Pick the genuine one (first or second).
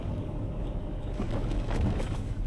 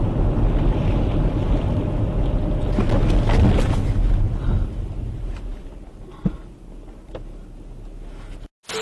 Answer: second